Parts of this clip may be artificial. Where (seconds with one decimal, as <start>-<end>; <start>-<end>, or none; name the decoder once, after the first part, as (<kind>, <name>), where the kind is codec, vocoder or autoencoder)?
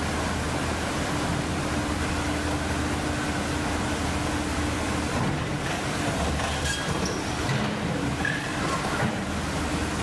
1.5-2.1 (vocoder, BigVGAN v2); 4.5-6.8; 8.5-9.6